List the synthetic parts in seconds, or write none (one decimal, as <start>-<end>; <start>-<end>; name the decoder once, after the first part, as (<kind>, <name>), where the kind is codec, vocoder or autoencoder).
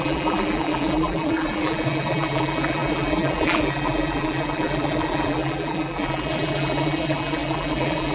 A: 0.0-8.1 (vocoder, BigVGAN v2)